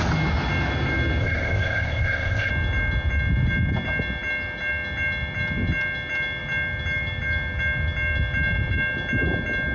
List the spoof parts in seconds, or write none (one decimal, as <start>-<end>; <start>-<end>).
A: 1.2-2.5